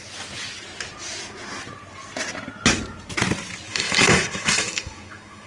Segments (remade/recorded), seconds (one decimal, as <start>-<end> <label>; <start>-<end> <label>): 0.0-3.7 recorded; 3.7-5.5 remade